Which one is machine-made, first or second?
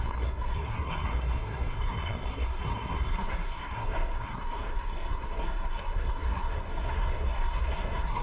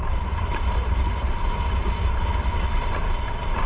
first